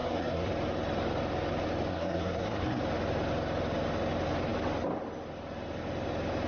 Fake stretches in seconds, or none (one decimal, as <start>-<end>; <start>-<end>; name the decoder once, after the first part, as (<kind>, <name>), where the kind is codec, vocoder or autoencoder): 0.0-0.5 (codec, SNAC); 1.9-2.8